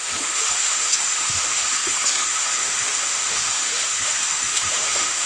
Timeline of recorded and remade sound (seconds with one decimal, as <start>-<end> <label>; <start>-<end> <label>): 0.0-5.3 remade